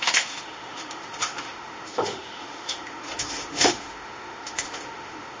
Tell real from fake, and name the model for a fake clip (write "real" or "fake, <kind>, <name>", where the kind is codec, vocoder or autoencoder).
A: fake, autoencoder, DAC-VAE